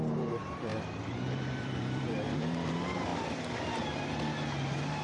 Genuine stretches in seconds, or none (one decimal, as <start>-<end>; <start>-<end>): 0.0-0.7; 2.7-5.0